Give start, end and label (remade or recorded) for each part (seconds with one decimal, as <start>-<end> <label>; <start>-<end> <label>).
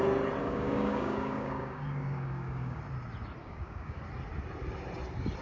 0.0-0.4 recorded; 0.4-2.8 remade; 2.8-3.4 recorded; 3.4-4.0 remade; 4.0-5.4 recorded